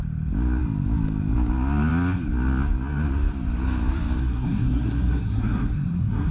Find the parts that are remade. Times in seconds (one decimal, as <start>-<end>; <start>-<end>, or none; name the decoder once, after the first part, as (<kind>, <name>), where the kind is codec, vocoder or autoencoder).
4.3-6.3 (codec, SNAC)